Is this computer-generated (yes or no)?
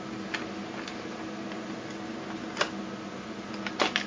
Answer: no